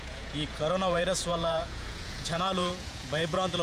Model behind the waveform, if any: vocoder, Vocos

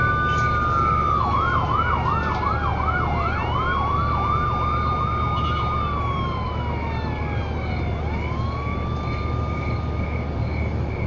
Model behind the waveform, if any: none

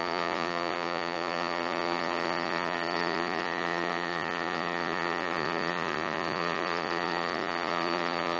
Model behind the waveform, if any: vocoder, Vocos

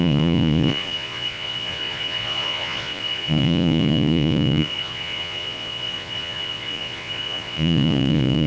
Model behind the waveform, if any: vocoder, Vocos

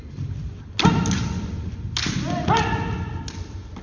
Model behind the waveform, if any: none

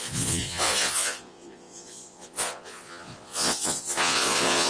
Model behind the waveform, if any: vocoder, Vocos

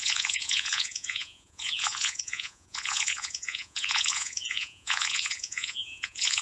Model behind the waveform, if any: vocoder, Vocos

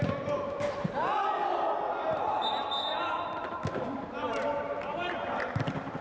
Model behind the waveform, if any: none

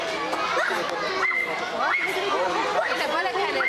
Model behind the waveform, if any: none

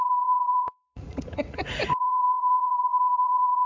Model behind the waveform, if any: vocoder, Vocos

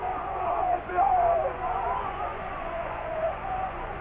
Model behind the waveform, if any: vocoder, Vocos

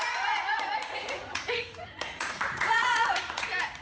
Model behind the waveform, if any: vocoder, Vocos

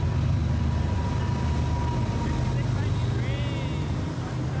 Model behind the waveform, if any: none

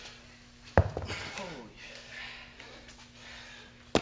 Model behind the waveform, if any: none